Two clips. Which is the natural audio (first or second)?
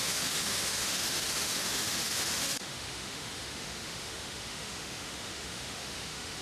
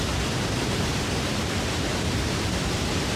second